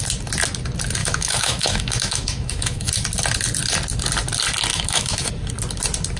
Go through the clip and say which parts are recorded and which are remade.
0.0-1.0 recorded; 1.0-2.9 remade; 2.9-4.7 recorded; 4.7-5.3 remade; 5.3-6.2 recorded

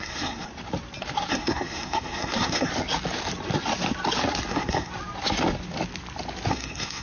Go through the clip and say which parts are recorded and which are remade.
0.0-0.5 remade; 0.5-1.3 recorded; 1.3-2.7 remade; 2.7-4.5 recorded; 4.5-4.9 remade; 4.9-6.5 recorded; 6.5-7.0 remade